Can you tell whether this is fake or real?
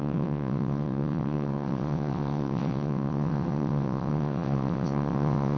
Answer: fake